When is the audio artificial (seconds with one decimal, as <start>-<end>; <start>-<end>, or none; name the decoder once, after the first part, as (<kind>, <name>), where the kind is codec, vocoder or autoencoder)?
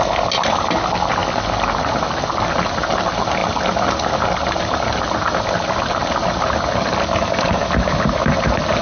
none